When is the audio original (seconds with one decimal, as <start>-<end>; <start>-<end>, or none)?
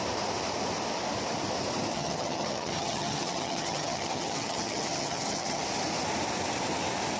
0.0-1.9; 5.6-7.2